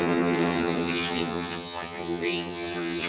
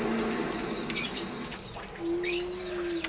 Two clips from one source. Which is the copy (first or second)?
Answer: first